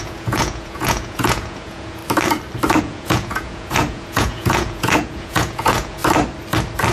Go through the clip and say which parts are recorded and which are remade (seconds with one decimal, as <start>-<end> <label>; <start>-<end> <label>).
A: 0.0-2.0 remade; 2.0-2.8 recorded; 2.8-6.0 remade; 6.0-6.9 recorded